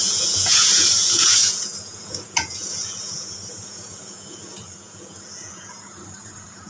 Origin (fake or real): fake